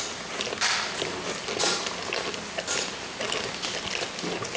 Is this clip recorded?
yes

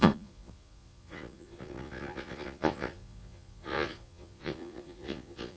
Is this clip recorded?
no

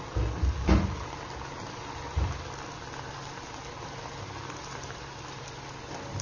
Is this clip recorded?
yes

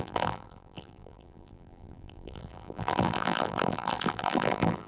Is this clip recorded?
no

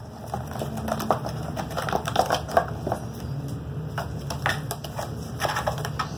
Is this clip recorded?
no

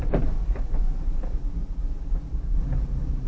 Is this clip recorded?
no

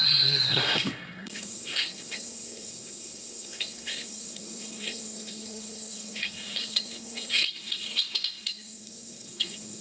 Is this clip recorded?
no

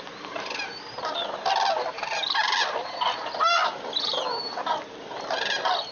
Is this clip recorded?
no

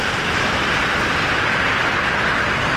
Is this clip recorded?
yes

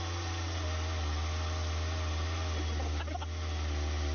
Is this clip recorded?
yes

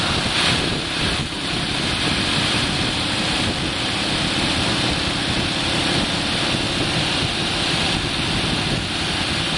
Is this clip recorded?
yes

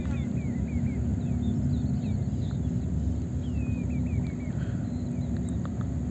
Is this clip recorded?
yes